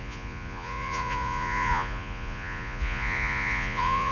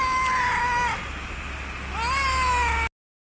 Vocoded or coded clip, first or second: first